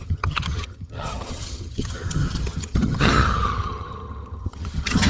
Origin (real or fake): fake